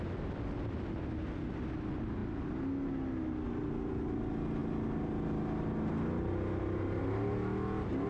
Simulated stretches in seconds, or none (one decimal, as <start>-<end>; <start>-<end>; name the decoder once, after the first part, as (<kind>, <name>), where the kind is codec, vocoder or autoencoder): none